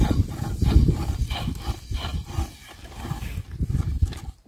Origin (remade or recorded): recorded